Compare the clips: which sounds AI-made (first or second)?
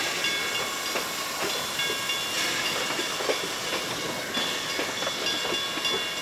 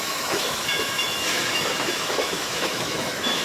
second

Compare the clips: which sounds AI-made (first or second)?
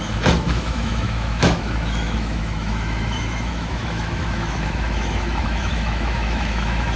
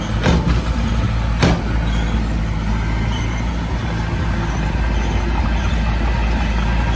first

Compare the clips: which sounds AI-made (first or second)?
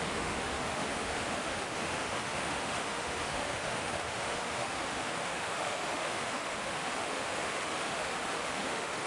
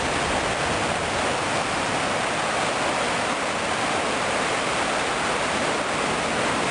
first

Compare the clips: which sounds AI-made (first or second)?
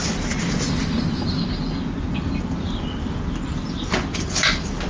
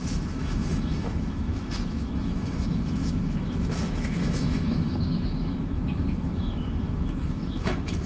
second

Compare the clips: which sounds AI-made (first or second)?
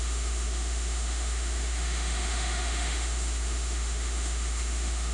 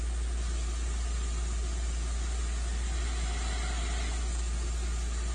first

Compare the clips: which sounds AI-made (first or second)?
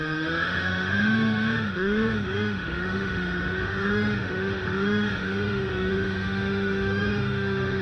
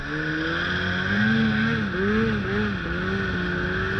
first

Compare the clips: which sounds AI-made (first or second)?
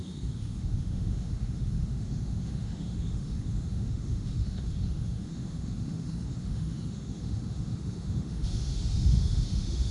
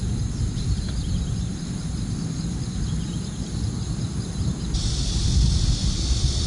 first